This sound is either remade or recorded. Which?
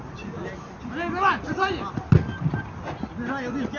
recorded